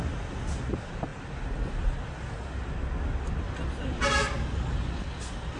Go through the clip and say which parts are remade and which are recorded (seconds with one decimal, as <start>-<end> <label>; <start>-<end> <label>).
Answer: 0.0-5.6 recorded